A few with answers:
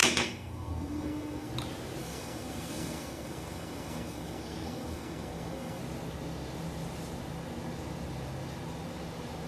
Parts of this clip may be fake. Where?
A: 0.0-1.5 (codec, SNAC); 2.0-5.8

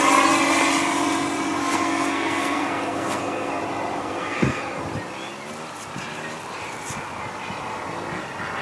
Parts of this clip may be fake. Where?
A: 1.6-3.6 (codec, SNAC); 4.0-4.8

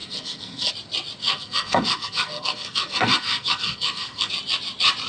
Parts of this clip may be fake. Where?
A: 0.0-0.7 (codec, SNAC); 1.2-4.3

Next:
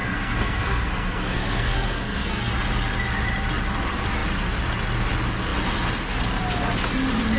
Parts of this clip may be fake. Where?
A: 0.0-2.5 (codec, SNAC)

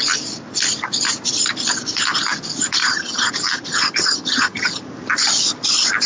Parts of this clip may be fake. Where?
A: 2.8-3.3 (vocoder, HiFi-GAN); 3.7-4.8